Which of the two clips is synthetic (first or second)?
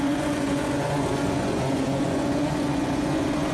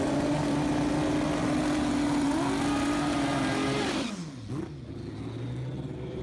first